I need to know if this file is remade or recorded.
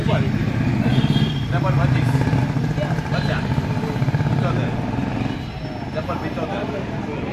recorded